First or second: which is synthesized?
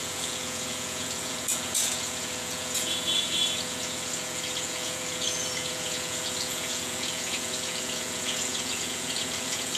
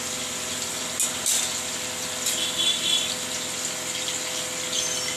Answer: first